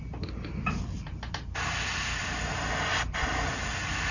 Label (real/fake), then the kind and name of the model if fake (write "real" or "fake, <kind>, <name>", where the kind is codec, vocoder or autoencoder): real